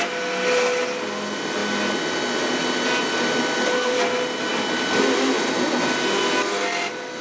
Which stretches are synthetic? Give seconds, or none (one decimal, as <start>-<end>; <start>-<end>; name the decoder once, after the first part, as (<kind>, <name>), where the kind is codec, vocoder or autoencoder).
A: none